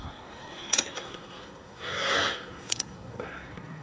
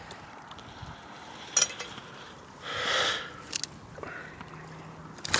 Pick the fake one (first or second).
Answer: first